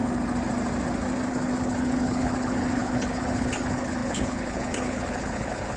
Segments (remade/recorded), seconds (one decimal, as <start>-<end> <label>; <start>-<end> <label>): 0.0-1.3 recorded; 1.3-5.8 remade